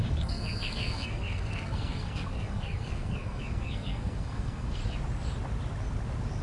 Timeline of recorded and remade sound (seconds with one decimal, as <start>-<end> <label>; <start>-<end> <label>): 0.0-4.8 remade; 4.8-6.4 recorded